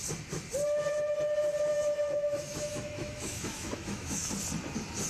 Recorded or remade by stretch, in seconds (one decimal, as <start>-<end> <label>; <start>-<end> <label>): 0.0-1.7 recorded; 1.7-4.3 remade; 4.3-5.1 recorded